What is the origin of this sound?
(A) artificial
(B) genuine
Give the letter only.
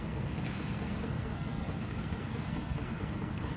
A